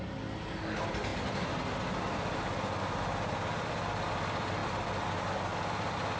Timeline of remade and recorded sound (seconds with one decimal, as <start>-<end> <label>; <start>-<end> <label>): 0.0-6.2 recorded